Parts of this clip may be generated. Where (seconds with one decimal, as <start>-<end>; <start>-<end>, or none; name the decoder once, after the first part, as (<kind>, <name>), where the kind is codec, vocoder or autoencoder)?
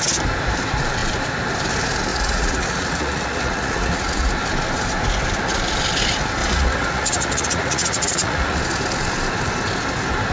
2.1-4.3 (vocoder, Vocos); 6.4-8.6